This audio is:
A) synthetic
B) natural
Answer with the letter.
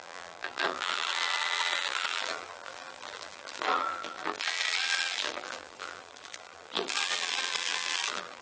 A